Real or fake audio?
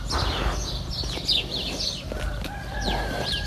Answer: real